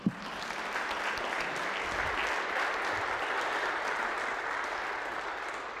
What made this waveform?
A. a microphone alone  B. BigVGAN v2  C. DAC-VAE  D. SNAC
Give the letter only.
A